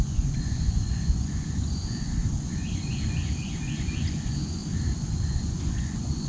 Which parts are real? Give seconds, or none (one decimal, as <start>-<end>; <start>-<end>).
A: 4.6-5.2